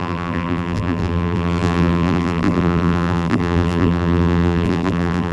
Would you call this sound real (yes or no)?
no